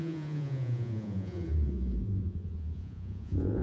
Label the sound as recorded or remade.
remade